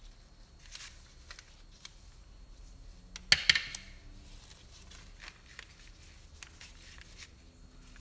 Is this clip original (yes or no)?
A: yes